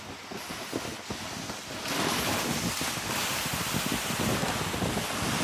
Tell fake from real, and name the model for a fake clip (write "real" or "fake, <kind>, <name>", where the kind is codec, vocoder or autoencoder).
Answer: real